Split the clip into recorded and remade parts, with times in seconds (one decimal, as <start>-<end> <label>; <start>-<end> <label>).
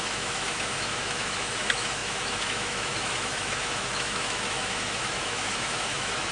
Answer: 0.0-6.3 remade